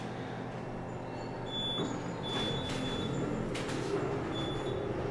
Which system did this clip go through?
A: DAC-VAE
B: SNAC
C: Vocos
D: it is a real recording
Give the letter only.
D